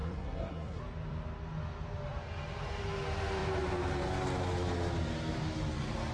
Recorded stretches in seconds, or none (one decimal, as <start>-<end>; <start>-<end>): 0.8-6.1